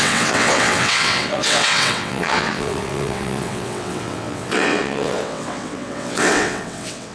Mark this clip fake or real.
fake